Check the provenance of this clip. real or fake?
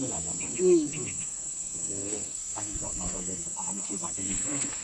fake